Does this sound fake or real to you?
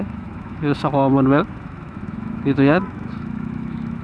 fake